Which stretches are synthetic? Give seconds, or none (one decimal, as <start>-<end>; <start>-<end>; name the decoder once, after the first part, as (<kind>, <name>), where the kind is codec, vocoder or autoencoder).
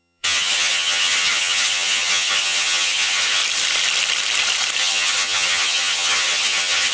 0.0-3.4 (vocoder, HiFi-GAN); 4.8-6.9